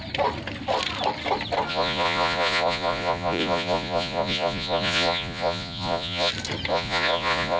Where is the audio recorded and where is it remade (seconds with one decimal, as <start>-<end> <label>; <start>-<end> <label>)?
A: 0.0-1.7 recorded; 1.7-6.3 remade; 6.3-6.7 recorded; 6.7-7.6 remade

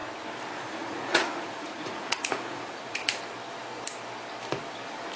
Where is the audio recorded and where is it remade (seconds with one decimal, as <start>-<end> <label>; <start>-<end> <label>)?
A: 0.0-0.6 recorded; 0.6-3.0 remade; 3.0-5.2 recorded

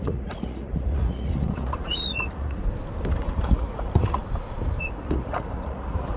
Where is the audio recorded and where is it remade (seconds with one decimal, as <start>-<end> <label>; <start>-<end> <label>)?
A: 0.0-2.6 remade; 2.6-3.1 recorded; 3.1-4.2 remade; 4.2-4.8 recorded; 4.8-6.2 remade

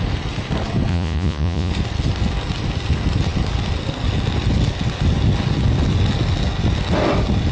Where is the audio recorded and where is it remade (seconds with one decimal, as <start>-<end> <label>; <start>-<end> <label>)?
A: 0.0-0.9 recorded; 0.9-1.7 remade; 1.7-7.5 recorded

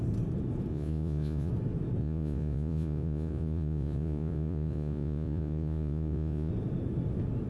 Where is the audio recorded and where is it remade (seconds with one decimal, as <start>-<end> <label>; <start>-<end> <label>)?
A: 0.0-0.7 recorded; 0.7-1.5 remade; 1.5-2.0 recorded; 2.0-6.5 remade; 6.5-7.5 recorded